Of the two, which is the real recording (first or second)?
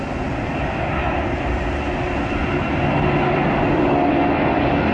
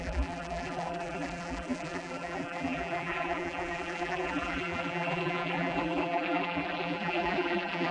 first